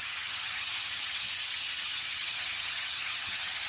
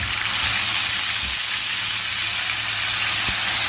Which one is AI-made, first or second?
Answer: first